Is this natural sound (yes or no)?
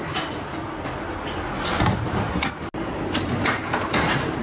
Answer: yes